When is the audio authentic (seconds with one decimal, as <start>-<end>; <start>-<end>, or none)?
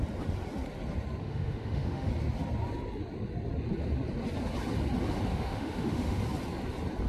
0.0-1.2; 2.1-5.3; 6.2-7.1